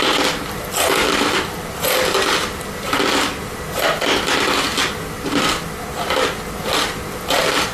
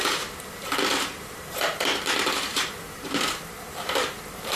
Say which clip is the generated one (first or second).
second